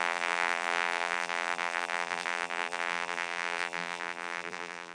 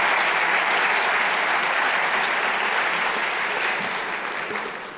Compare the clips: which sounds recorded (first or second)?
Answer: second